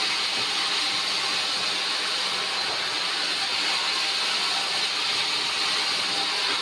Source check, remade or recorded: recorded